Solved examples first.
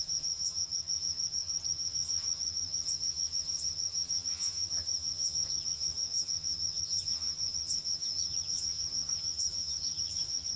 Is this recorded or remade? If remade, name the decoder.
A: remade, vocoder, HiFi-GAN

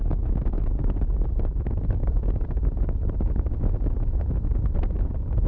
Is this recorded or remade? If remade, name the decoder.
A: recorded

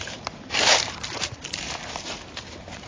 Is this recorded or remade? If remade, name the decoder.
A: remade, vocoder, BigVGAN v2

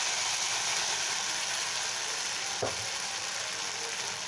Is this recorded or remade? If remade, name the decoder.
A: recorded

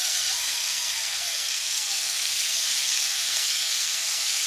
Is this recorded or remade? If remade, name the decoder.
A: remade, codec, SNAC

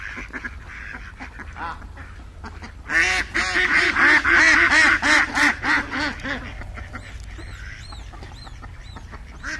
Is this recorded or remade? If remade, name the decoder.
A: recorded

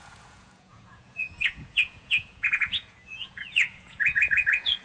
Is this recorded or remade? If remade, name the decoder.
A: remade, vocoder, Vocos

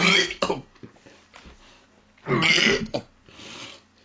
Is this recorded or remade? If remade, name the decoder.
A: recorded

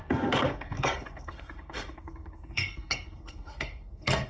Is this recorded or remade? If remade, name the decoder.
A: remade, codec, SNAC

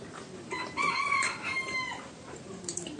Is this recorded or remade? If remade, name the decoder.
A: recorded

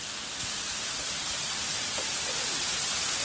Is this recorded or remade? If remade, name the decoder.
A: recorded